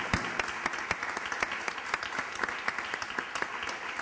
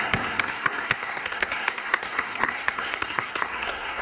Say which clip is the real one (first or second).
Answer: first